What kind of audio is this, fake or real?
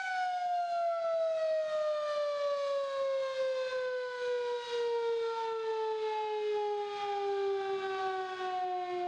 real